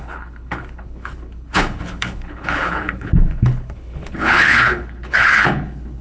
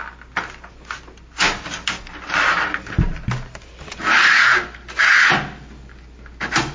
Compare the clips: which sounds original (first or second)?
second